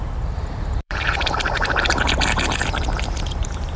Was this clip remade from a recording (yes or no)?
yes